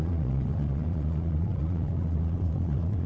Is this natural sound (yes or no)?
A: no